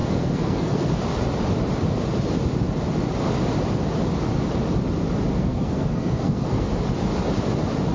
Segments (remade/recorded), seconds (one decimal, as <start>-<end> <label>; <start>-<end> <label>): 0.0-0.9 remade; 0.9-5.4 recorded; 5.4-6.7 remade; 6.7-7.9 recorded